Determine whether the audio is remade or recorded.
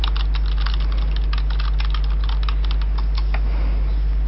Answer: recorded